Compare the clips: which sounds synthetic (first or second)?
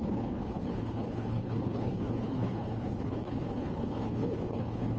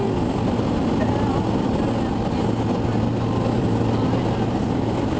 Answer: first